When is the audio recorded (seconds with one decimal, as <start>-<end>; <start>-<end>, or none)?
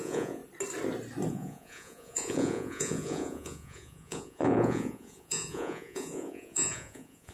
0.4-1.3